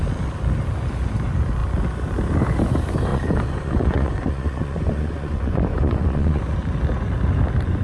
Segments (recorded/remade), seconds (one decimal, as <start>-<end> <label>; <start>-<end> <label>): 0.0-3.1 recorded; 3.1-6.4 remade; 6.4-7.8 recorded